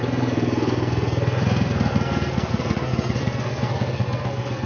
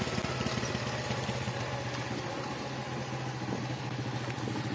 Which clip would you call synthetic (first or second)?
first